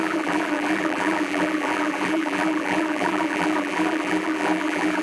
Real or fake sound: fake